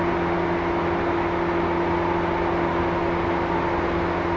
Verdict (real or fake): real